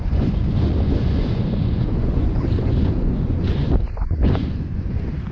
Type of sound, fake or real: fake